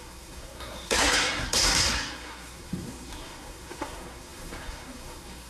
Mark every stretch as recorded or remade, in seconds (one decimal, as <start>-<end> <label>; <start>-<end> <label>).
0.0-5.5 remade